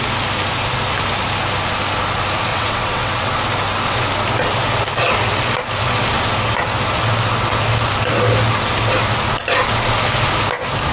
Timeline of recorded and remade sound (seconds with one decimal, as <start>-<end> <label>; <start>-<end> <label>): 0.0-2.5 recorded; 2.5-3.3 remade; 3.3-10.9 recorded